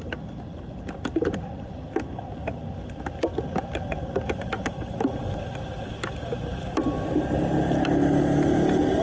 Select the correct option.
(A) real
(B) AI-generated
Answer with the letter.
A